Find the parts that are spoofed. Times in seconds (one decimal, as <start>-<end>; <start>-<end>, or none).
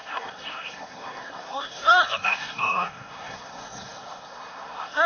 0.0-5.1